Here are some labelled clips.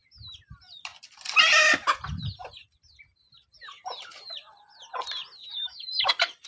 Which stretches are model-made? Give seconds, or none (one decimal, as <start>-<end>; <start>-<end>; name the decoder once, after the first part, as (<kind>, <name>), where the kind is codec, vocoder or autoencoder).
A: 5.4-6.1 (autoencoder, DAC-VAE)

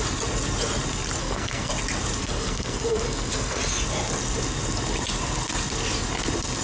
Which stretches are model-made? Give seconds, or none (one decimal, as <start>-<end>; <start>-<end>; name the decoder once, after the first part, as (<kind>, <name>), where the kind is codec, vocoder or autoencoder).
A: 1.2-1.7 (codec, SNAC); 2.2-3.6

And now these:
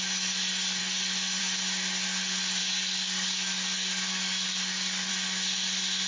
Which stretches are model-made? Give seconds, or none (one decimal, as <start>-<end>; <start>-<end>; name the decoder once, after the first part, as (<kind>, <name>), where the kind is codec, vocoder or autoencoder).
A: 2.6-5.1 (codec, DAC)

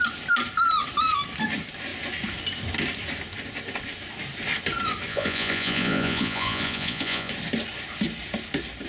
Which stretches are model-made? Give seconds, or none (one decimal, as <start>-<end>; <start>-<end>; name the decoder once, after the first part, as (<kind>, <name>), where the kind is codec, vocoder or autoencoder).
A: 5.1-7.3 (vocoder, Vocos)

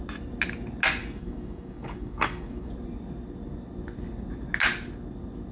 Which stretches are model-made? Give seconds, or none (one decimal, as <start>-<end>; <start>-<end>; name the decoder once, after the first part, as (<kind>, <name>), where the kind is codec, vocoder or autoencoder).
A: 1.0-2.7 (codec, DAC)